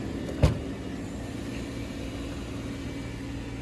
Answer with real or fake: real